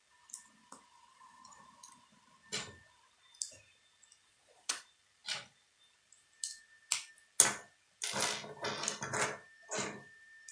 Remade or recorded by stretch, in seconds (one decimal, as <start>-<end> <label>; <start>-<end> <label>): 0.0-1.1 recorded; 1.1-1.6 remade; 1.6-4.3 recorded; 4.3-4.8 remade; 4.8-10.5 recorded